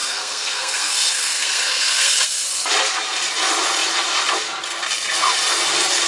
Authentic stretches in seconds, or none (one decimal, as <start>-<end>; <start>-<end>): 2.7-6.1